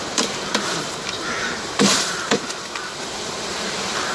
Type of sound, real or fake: fake